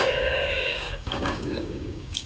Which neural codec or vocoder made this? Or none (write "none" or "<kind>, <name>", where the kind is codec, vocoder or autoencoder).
codec, DAC